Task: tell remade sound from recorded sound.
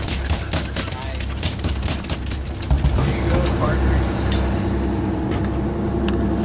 recorded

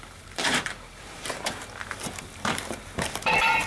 remade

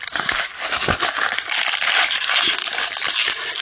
recorded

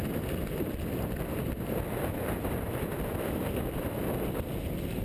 recorded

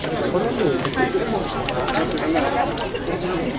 remade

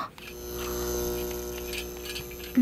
recorded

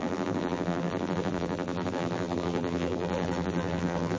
remade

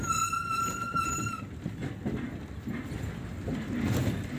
remade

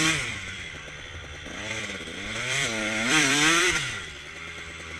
remade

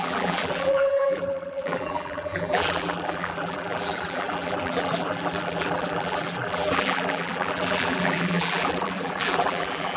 remade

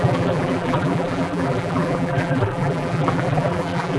remade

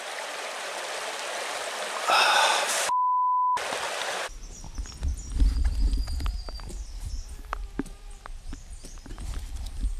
remade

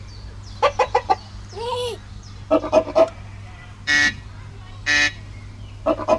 remade